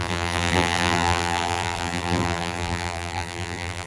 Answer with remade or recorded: remade